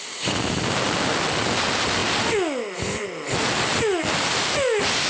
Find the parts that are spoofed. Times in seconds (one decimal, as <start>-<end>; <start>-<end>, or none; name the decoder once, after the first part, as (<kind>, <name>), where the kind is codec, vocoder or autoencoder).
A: none